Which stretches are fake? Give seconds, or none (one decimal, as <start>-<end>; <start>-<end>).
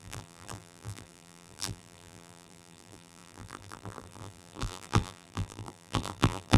0.0-6.6